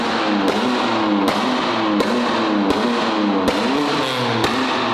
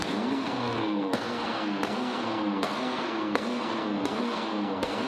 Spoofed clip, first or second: second